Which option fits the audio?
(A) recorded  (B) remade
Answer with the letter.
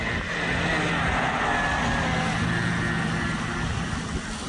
A